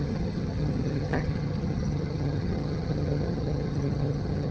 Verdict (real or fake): fake